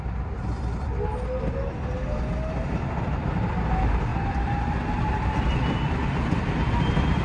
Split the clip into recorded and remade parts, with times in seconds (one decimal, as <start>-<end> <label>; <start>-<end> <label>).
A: 0.0-4.1 recorded; 4.1-6.7 remade; 6.7-7.2 recorded